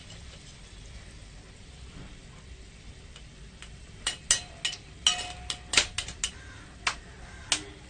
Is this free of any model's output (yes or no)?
yes